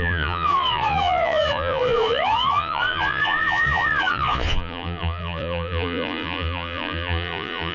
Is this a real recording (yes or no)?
no